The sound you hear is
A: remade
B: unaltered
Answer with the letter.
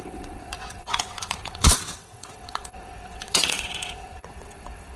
A